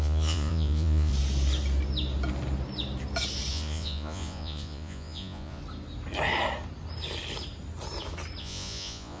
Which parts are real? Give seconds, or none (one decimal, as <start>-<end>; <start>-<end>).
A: 1.1-3.5; 5.6-8.4